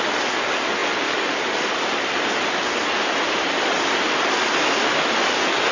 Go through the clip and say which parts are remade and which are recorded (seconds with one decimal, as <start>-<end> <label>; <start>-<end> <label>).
0.0-5.7 recorded